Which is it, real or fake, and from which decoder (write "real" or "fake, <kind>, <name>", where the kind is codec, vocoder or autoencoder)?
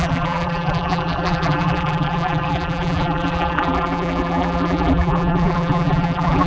fake, vocoder, BigVGAN v2